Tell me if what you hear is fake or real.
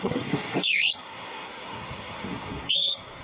fake